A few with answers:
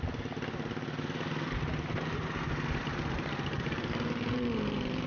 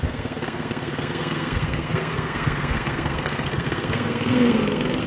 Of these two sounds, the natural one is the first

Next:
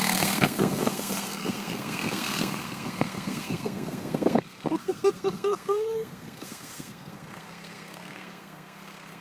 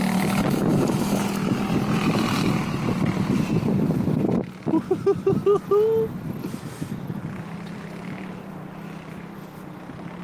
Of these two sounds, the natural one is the second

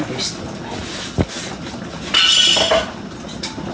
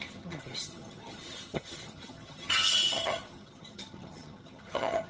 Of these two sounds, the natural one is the first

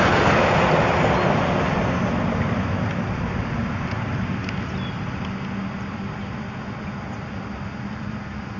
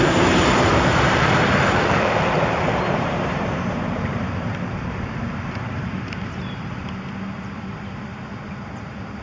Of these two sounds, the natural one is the first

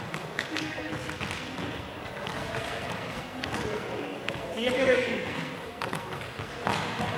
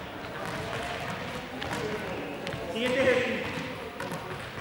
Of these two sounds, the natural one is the second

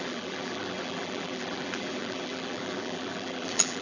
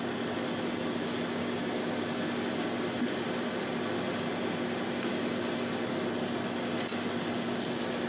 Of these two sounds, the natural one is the second